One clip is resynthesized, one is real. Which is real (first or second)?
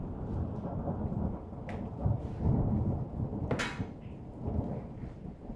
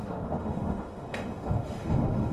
first